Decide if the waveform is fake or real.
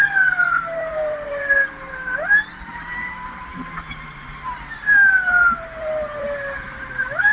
fake